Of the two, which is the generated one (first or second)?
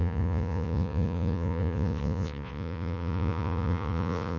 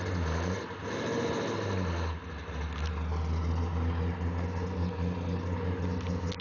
first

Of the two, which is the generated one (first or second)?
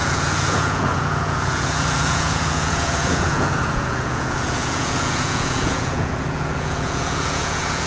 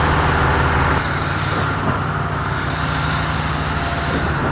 first